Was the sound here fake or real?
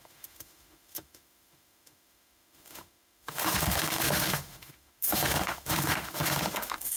fake